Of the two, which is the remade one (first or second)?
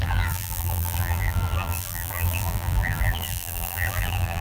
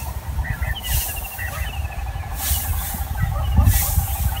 first